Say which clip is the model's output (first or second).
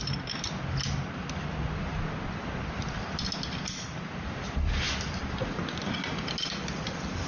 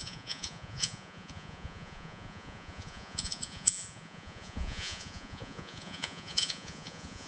second